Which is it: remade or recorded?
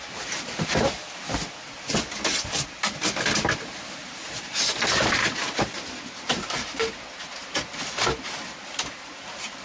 recorded